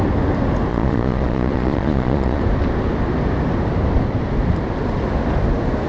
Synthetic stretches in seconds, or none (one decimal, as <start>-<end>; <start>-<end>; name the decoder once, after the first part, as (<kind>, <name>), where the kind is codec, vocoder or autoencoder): 0.7-2.4 (vocoder, Vocos)